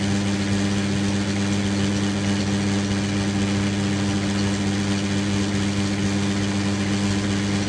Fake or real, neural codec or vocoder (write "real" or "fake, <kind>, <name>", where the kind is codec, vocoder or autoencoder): real